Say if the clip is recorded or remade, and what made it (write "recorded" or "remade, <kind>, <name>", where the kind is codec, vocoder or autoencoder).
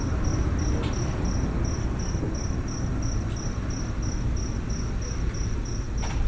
recorded